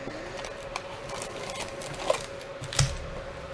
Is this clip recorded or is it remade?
recorded